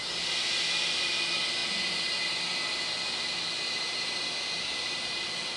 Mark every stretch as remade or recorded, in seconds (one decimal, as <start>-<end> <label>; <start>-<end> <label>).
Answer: 0.0-5.6 recorded